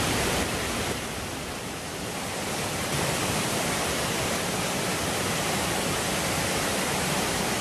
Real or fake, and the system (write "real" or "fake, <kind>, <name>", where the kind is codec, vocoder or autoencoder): real